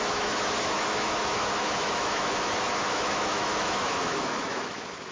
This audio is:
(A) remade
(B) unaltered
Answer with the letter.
A